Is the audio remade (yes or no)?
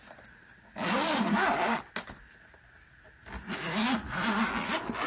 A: no